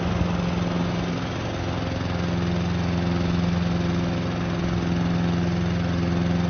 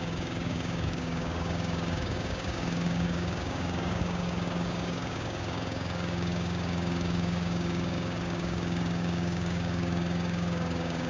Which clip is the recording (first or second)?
first